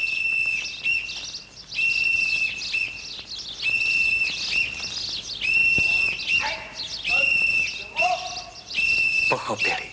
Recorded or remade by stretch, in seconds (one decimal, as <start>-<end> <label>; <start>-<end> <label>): 0.0-9.9 recorded